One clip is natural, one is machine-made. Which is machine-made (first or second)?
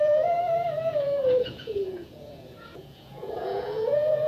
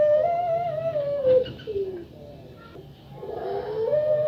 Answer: first